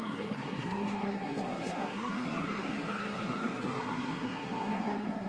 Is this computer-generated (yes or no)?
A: yes